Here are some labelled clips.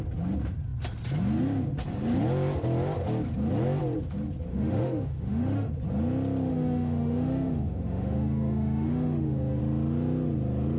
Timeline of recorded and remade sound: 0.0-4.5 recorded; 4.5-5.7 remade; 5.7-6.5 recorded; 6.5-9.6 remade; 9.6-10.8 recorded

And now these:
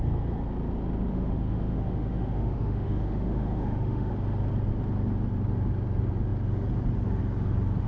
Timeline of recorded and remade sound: 0.0-1.1 recorded; 1.1-4.1 remade; 4.1-7.9 recorded

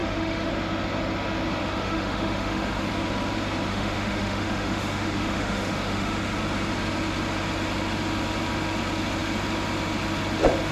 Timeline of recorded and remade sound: 0.0-0.5 remade; 0.5-1.6 recorded; 1.6-2.9 remade; 2.9-3.7 recorded; 3.7-6.3 remade; 6.3-10.7 recorded

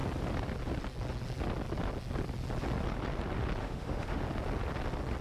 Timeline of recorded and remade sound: 0.0-3.6 recorded; 3.6-4.2 remade; 4.2-5.2 recorded

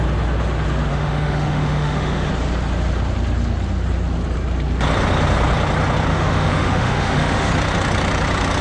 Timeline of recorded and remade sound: 0.0-0.9 recorded; 0.9-2.3 remade; 2.3-6.1 recorded; 6.1-7.5 remade; 7.5-8.6 recorded

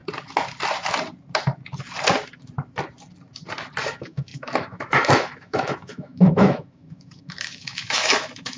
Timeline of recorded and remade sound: 0.0-3.8 recorded; 3.8-8.6 remade